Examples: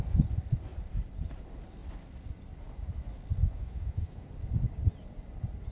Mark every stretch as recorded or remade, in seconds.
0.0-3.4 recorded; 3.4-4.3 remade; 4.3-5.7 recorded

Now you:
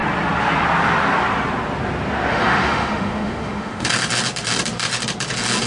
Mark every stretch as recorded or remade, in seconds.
0.0-2.3 recorded; 2.3-3.9 remade; 3.9-5.7 recorded

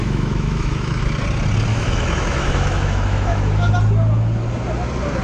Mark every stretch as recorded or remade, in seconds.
0.0-1.0 remade; 1.0-1.7 recorded; 1.7-3.7 remade; 3.7-5.2 recorded

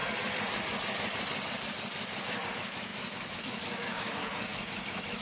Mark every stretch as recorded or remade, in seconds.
0.0-2.5 recorded; 2.5-5.2 remade

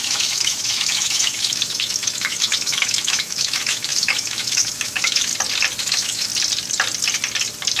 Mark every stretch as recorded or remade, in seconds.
0.0-5.3 remade; 5.3-5.8 recorded; 5.8-6.3 remade; 6.3-7.8 recorded

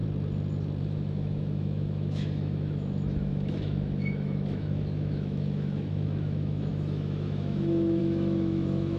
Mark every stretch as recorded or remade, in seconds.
0.0-0.8 recorded; 0.8-9.0 remade

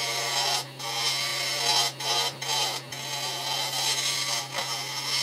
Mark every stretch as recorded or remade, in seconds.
0.0-5.2 recorded

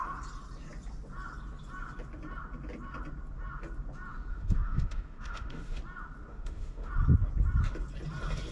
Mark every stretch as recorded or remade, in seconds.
0.0-4.3 recorded; 4.3-5.8 remade; 5.8-6.3 recorded; 6.3-6.9 remade; 6.9-8.5 recorded